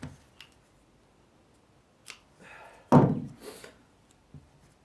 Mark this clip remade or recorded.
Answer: recorded